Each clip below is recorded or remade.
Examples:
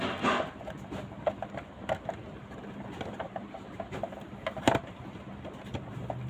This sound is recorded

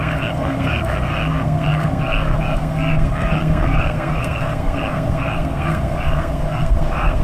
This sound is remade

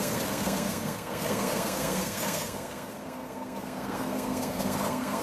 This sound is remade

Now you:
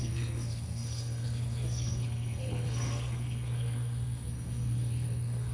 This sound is remade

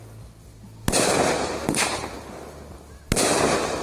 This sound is recorded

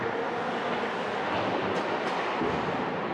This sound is recorded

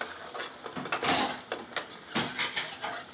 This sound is recorded